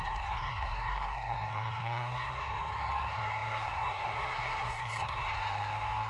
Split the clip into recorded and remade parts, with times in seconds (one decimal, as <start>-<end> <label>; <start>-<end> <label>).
0.0-6.1 remade